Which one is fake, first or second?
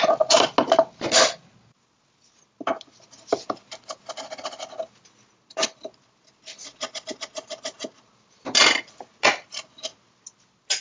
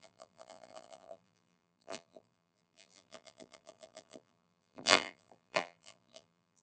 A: second